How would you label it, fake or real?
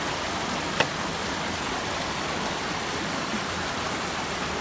real